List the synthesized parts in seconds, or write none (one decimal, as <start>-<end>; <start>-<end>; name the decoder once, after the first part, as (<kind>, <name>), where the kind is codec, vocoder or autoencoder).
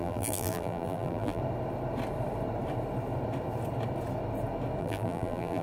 0.0-1.4 (vocoder, BigVGAN v2); 4.8-5.6